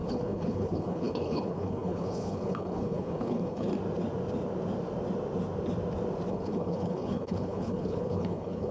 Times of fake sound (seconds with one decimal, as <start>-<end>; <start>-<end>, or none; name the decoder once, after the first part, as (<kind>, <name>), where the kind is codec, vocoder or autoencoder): 0.0-3.7 (codec, HILCodec); 6.3-8.7